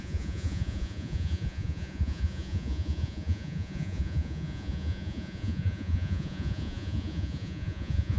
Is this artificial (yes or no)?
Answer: yes